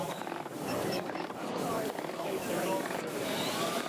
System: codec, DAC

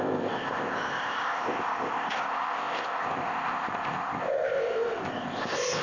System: codec, ZipCodec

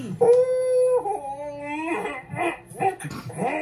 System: none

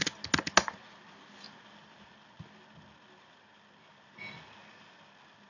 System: none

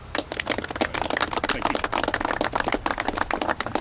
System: none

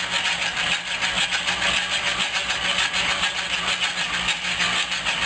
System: none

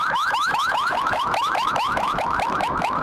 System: autoencoder, DAC-VAE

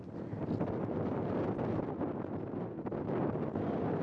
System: none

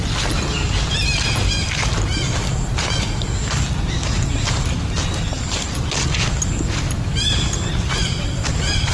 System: none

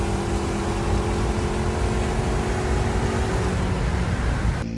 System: none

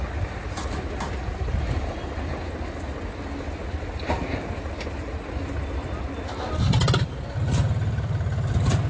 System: none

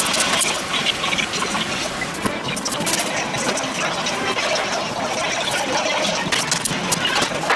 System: none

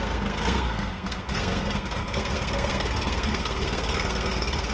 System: codec, SNAC